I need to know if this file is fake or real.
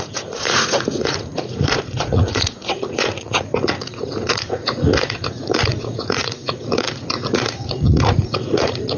fake